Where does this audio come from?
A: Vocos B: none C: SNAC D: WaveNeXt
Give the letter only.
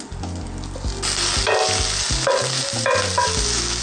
B